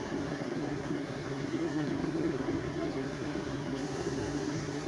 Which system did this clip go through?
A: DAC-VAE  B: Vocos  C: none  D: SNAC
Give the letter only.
D